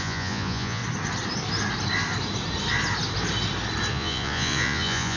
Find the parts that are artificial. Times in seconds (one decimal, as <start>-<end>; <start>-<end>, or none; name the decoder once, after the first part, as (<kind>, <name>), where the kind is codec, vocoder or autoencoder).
0.0-0.8 (vocoder, Vocos); 3.9-5.2